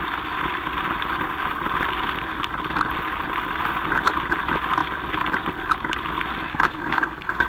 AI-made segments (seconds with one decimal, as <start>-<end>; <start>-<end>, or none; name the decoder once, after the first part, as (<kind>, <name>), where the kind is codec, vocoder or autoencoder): 6.5-7.5 (codec, SNAC)

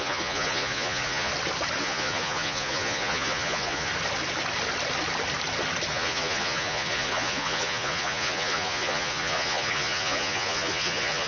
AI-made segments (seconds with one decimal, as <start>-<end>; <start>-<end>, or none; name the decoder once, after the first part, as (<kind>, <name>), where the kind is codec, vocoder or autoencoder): 0.0-1.3 (vocoder, Vocos); 1.8-3.9; 5.9-11.3

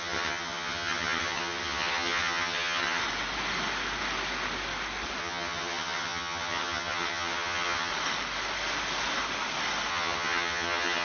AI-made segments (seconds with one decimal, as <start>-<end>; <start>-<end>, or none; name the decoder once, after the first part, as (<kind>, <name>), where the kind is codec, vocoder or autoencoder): 0.0-3.0 (vocoder, HiFi-GAN); 5.2-7.9; 9.9-11.0

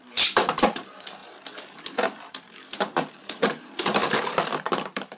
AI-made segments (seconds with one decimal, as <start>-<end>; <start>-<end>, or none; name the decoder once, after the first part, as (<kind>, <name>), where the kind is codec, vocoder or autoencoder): 0.0-5.2 (vocoder, BigVGAN v2)

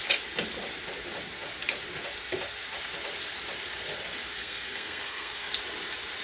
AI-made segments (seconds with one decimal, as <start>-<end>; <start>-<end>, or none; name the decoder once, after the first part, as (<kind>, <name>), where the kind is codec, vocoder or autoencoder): 4.4-5.5 (codec, SNAC)